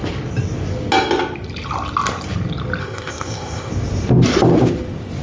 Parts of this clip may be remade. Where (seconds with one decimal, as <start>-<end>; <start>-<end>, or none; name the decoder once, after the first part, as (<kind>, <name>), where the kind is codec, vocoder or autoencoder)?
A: 2.8-3.7 (codec, ZipCodec)